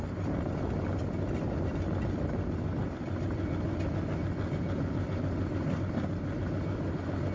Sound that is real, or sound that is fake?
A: real